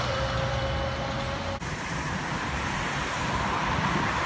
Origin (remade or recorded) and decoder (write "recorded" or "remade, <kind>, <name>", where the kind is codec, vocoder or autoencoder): recorded